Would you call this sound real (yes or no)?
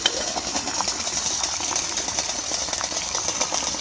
yes